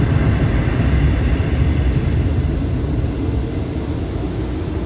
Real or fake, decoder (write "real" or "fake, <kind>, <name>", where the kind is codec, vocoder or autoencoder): real